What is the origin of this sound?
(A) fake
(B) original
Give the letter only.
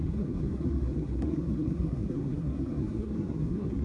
A